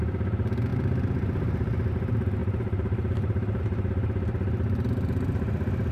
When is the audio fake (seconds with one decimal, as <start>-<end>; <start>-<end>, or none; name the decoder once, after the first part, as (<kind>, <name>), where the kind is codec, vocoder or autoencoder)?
2.4-3.6 (vocoder, BigVGAN v2)